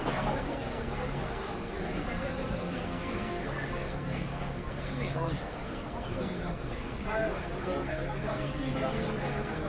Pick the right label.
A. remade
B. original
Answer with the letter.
A